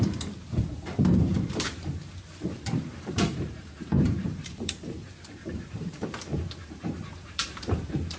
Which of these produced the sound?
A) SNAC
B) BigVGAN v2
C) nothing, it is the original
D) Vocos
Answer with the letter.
B